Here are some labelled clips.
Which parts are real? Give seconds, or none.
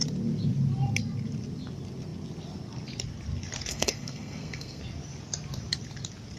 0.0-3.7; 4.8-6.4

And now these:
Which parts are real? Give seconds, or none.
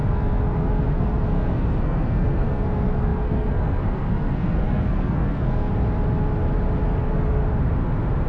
5.7-7.0; 7.4-8.3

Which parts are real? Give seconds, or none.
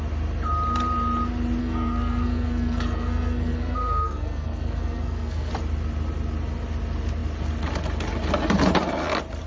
0.0-1.6; 5.5-9.5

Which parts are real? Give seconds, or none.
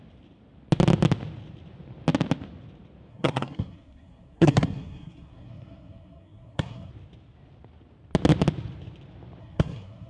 0.0-3.1; 6.9-9.4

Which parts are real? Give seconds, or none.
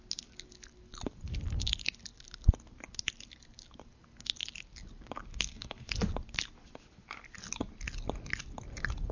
0.0-5.3; 5.9-9.1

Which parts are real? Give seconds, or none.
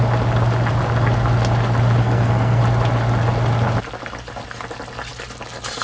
0.0-2.0; 2.6-5.8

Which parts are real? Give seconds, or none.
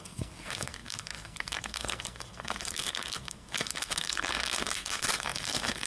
none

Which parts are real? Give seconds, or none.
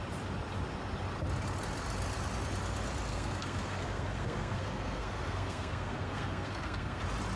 0.0-3.1; 7.0-7.4